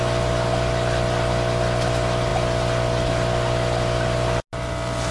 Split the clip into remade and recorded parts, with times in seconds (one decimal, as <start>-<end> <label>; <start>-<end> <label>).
0.0-5.1 recorded